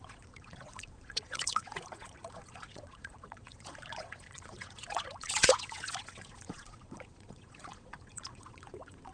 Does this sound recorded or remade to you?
remade